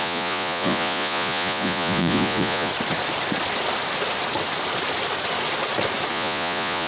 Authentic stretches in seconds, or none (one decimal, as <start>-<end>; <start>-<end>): 2.7-6.1